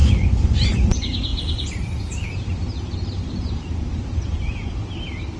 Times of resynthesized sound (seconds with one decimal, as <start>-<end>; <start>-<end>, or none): 0.0-0.7; 1.3-4.5